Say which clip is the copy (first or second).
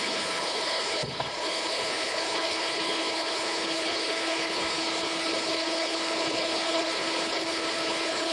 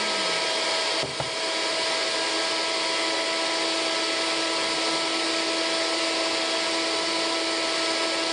first